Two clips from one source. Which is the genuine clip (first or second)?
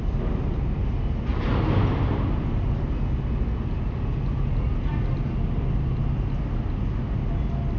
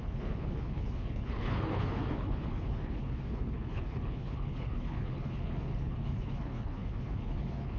first